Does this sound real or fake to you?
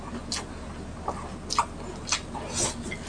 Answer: real